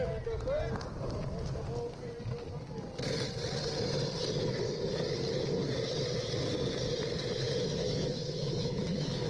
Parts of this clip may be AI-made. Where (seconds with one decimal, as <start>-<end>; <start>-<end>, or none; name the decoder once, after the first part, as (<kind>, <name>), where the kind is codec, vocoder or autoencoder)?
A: 7.8-9.3 (autoencoder, DAC-VAE)